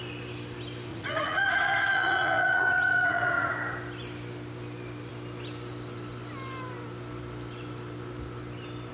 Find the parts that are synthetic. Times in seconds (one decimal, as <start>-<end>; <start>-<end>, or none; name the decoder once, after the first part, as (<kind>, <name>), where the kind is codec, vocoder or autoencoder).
0.9-3.5 (vocoder, Vocos)